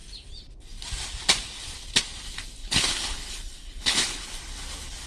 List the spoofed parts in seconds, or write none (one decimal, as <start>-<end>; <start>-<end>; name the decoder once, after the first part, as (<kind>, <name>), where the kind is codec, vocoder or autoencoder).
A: 2.6-4.3 (codec, HILCodec)